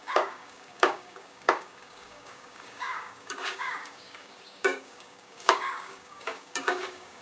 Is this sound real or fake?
fake